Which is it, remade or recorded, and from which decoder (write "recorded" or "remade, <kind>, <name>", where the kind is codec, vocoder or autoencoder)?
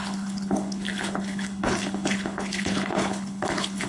remade, codec, HILCodec